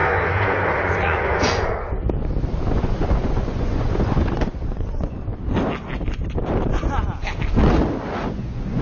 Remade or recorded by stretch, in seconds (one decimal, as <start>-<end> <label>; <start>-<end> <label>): 0.0-1.7 remade; 1.7-2.7 recorded; 2.7-5.3 remade; 5.3-8.3 recorded; 8.3-8.8 remade